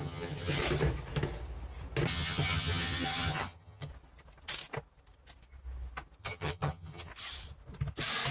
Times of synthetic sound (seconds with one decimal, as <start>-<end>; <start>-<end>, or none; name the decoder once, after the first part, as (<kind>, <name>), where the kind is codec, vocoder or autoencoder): 0.0-0.6 (vocoder, HiFi-GAN); 2.1-3.9; 6.2-7.1